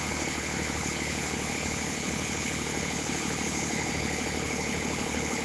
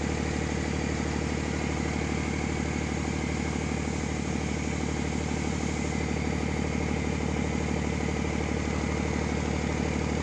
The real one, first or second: second